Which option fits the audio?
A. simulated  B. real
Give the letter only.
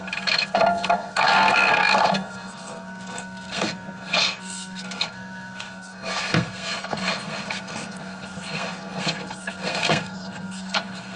A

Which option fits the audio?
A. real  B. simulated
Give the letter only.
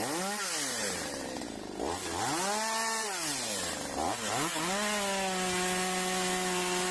A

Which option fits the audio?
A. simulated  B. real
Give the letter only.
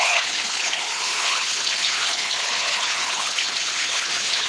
A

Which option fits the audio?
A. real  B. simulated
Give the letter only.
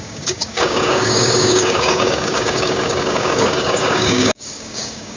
B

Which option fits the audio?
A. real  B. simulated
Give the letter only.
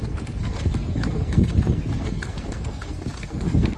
B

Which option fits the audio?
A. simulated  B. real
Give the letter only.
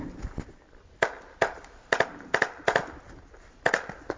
B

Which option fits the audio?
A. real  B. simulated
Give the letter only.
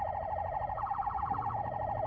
B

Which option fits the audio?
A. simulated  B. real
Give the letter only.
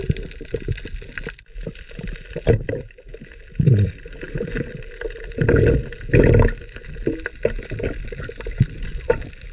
B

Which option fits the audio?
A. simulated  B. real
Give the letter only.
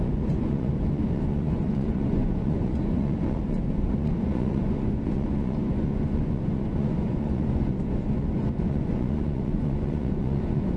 A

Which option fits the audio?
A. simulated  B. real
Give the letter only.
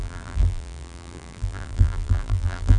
A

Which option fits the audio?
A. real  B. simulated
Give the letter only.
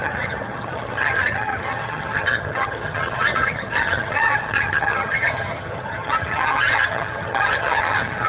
B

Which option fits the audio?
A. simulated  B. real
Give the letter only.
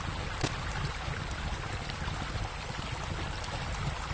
B